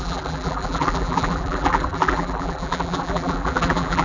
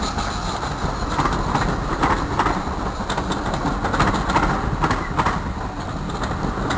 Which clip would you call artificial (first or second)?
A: first